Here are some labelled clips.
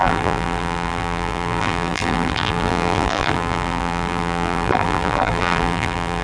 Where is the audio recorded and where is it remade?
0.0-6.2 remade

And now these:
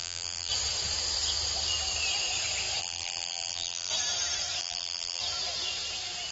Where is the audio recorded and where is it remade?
0.0-0.5 remade; 0.5-2.8 recorded; 2.8-3.9 remade; 3.9-4.6 recorded; 4.6-5.2 remade; 5.2-6.3 recorded

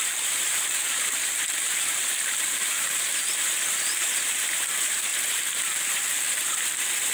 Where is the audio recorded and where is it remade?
0.0-7.1 remade